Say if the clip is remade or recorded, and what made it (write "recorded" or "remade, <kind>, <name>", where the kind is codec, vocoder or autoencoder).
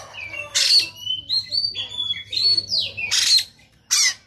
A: recorded